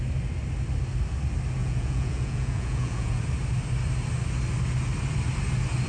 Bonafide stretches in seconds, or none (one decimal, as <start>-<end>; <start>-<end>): 0.0-1.6; 3.2-5.9